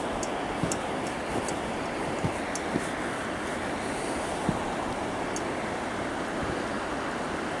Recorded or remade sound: recorded